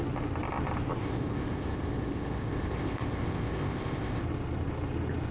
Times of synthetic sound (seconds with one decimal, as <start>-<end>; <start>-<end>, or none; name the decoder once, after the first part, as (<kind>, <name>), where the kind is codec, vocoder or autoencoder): 1.0-4.2 (codec, ZipCodec)